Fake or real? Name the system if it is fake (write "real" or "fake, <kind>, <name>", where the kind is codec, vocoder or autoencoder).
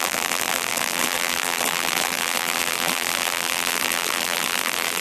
fake, vocoder, BigVGAN v2